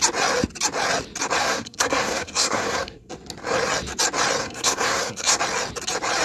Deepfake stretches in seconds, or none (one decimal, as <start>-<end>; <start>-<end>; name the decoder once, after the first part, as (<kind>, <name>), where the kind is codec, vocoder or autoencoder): 1.4-3.1 (codec, SNAC); 4.4-5.4

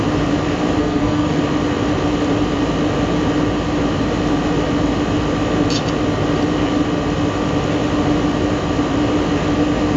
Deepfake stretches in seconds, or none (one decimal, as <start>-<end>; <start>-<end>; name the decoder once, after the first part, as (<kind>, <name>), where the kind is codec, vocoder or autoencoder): 0.8-1.4 (codec, SNAC)

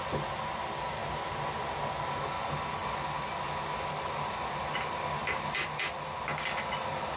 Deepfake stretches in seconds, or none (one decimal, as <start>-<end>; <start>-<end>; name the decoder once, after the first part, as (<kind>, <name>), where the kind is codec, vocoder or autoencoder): 1.0-1.8 (vocoder, BigVGAN v2)

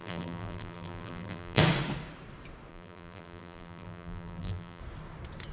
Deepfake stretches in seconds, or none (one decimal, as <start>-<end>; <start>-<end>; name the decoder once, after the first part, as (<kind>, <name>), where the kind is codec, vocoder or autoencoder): 0.0-1.6 (vocoder, BigVGAN v2); 2.7-4.8

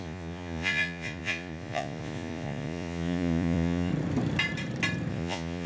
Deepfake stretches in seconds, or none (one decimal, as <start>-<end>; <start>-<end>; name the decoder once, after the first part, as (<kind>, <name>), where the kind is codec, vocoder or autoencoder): 0.0-3.9 (vocoder, Vocos); 5.1-5.7